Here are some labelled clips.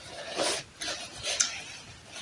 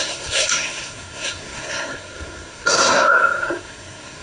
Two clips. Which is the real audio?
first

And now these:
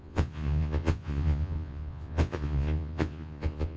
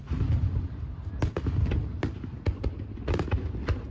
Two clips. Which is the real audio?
second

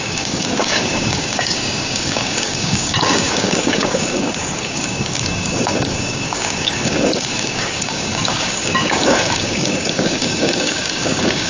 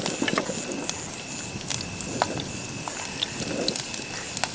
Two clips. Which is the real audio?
second